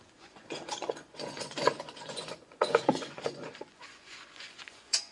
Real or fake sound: fake